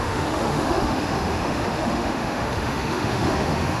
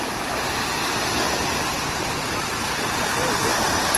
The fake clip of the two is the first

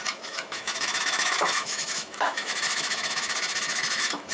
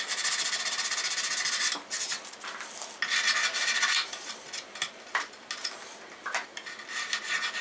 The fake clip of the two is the first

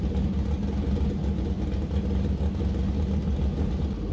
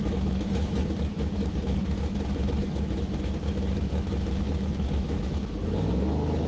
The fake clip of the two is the second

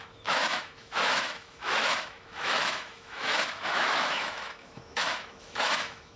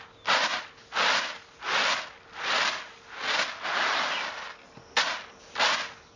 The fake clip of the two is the first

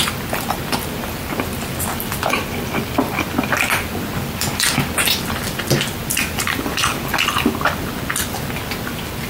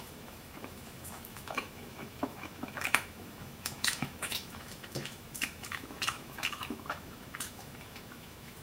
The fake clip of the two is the second